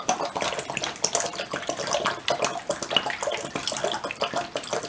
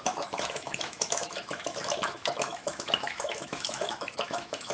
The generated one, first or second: second